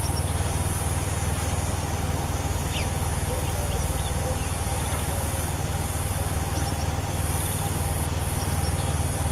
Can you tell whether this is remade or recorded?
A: recorded